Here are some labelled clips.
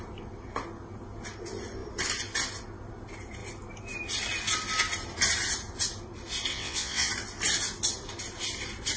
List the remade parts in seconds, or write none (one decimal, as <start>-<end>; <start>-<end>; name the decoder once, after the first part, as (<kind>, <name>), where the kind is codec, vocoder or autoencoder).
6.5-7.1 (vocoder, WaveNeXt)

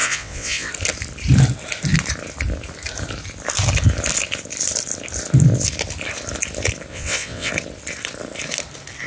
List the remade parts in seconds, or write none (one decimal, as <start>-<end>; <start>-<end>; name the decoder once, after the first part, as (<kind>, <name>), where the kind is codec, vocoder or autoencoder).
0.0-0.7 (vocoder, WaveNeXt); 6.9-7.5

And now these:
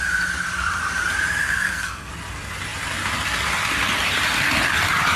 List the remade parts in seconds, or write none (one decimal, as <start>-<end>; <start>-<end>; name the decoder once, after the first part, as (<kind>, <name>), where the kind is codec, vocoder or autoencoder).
1.4-2.1 (codec, SNAC)

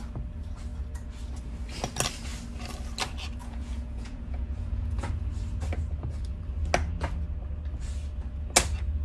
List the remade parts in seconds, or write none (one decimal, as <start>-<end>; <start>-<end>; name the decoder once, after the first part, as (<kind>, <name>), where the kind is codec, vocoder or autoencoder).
3.4-5.1 (vocoder, Vocos)